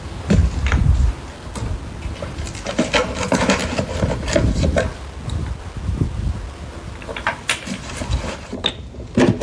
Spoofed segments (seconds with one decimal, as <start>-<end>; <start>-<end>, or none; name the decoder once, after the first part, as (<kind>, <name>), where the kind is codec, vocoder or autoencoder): none